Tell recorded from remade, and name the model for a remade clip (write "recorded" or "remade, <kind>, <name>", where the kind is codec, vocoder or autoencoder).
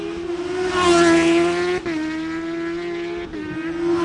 recorded